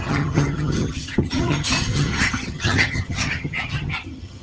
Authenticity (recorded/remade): remade